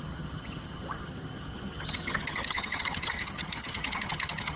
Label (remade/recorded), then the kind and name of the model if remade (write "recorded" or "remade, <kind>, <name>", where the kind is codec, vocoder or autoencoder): remade, vocoder, HiFi-GAN